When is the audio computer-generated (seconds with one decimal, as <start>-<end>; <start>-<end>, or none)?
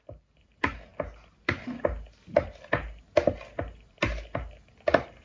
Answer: none